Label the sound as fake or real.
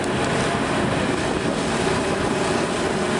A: real